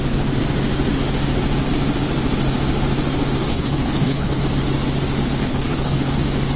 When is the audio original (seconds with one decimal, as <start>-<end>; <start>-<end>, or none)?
0.0-3.5; 4.4-5.4; 6.1-6.6